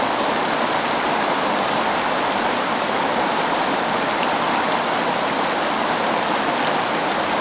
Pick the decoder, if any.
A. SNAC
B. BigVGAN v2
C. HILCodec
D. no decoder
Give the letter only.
D